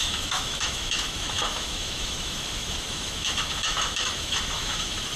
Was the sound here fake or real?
fake